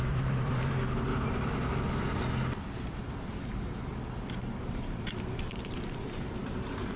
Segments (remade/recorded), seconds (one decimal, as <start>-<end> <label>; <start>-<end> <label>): 0.0-1.1 remade; 1.1-4.7 recorded; 4.7-7.0 remade